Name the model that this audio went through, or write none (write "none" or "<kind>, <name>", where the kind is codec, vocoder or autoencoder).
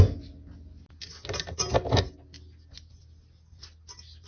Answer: none